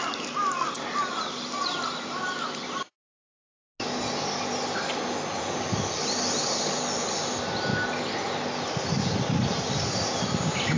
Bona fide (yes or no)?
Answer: yes